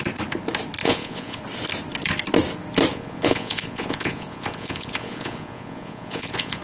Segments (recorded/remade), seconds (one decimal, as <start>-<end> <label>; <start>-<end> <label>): 0.0-0.8 recorded; 0.8-1.4 remade; 1.4-2.9 recorded; 2.9-6.6 remade